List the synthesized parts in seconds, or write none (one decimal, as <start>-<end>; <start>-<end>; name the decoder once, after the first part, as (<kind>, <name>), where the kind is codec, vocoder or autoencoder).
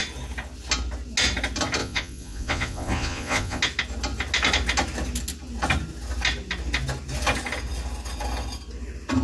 1.8-3.6 (vocoder, Vocos)